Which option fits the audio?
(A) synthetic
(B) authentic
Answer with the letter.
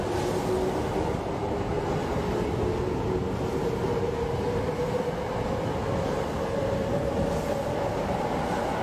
B